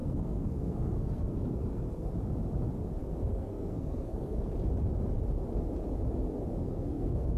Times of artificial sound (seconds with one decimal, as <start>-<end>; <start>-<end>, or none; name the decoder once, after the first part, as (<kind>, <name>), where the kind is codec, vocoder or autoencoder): 0.0-2.1 (codec, SNAC); 3.0-4.5; 6.6-7.4